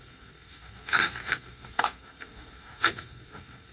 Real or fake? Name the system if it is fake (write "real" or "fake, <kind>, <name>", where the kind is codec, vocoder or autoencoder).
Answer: fake, codec, SNAC